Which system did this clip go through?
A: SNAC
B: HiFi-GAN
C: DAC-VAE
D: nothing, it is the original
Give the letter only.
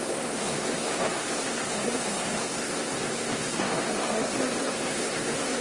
A